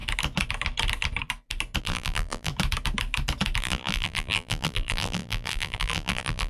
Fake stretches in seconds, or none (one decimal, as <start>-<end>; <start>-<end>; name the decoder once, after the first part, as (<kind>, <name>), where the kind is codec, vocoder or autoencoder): 1.8-2.5 (vocoder, BigVGAN v2); 3.6-6.5